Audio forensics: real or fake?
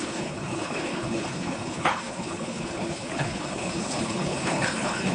fake